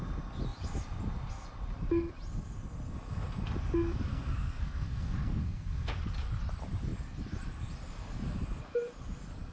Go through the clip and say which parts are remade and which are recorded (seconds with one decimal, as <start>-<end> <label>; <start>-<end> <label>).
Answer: 0.0-4.1 recorded; 4.1-5.9 remade; 5.9-9.5 recorded